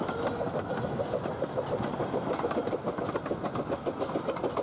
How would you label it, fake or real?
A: real